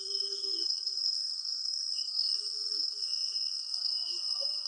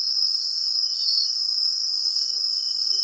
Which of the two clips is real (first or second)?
second